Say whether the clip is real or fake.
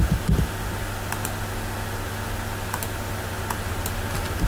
real